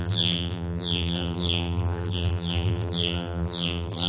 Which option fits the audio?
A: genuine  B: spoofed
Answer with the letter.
B